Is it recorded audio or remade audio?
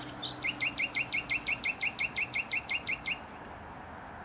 recorded